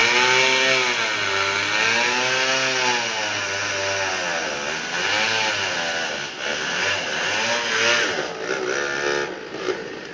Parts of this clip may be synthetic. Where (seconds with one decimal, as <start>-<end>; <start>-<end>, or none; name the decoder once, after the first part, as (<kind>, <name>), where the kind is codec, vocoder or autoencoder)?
6.5-7.7 (vocoder, BigVGAN v2); 9.5-10.1